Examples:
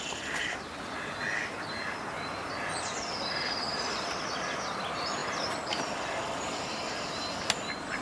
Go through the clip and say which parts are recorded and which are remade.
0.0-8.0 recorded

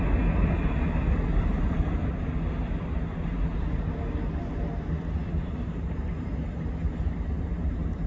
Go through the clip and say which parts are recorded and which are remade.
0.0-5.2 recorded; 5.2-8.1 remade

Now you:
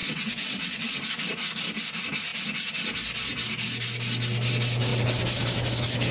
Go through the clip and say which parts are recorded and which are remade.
0.0-1.0 remade; 1.0-6.1 recorded

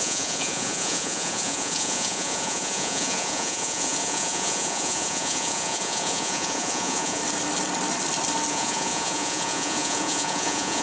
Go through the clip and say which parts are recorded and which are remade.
0.0-7.2 remade; 7.2-8.5 recorded; 8.5-10.8 remade

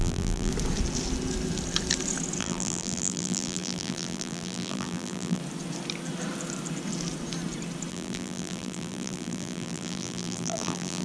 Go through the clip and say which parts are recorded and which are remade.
0.0-0.5 remade; 0.5-2.4 recorded; 2.4-5.4 remade; 5.4-7.9 recorded; 7.9-11.0 remade

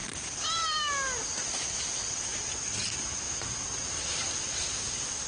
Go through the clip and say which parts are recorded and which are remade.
0.0-5.3 recorded